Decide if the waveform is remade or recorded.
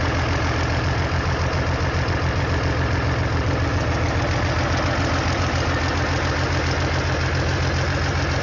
recorded